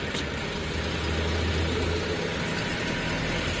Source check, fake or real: real